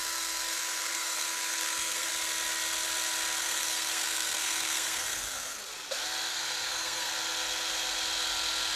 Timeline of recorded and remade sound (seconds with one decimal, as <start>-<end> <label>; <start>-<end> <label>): 0.0-2.1 remade; 2.1-3.4 recorded; 3.4-5.6 remade; 5.6-6.3 recorded; 6.3-7.1 remade; 7.1-8.8 recorded